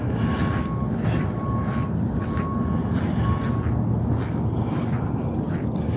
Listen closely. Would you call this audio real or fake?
real